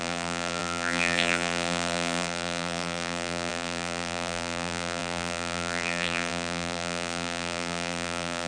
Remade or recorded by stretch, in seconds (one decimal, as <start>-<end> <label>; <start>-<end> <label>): 0.0-8.5 remade